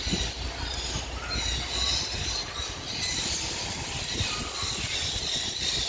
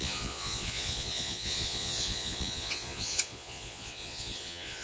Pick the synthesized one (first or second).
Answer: second